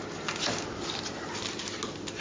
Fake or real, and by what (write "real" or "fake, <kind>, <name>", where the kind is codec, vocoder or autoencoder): real